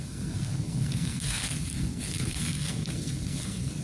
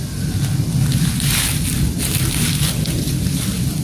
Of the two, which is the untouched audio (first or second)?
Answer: second